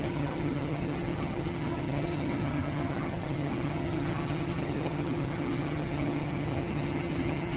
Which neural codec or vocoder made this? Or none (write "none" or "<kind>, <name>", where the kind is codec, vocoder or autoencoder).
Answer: vocoder, HiFi-GAN